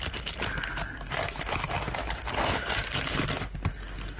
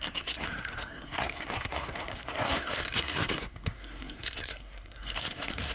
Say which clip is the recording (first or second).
first